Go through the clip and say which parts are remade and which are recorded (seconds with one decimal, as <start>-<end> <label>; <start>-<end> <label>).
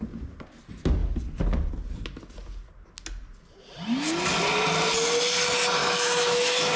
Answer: 0.0-5.8 recorded; 5.8-6.8 remade